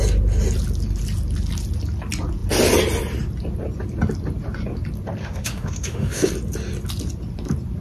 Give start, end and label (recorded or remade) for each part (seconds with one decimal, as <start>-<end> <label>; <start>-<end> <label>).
0.0-5.2 recorded; 5.2-6.3 remade; 6.3-7.8 recorded